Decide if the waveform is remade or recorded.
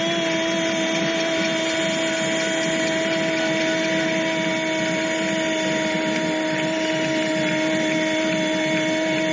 recorded